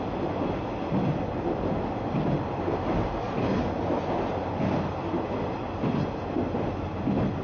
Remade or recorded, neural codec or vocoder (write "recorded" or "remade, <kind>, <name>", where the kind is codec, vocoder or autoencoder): recorded